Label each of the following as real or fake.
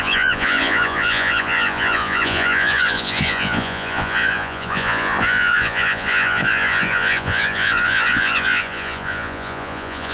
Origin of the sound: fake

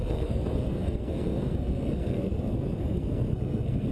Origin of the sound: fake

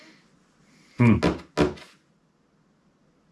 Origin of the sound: real